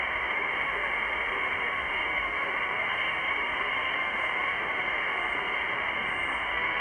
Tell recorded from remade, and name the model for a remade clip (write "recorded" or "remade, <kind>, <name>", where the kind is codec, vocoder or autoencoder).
remade, autoencoder, DAC-VAE